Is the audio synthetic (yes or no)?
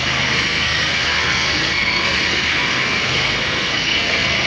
yes